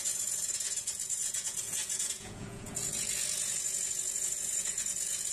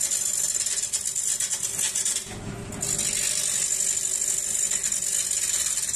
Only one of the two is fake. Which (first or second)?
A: first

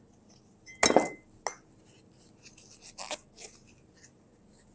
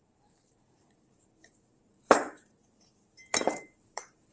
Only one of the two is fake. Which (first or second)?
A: second